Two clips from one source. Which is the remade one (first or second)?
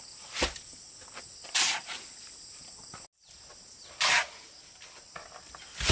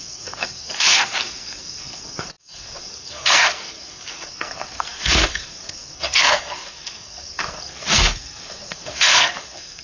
second